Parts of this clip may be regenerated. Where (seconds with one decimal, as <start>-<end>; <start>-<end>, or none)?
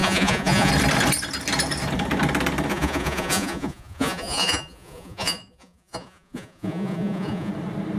0.0-0.7; 2.7-7.5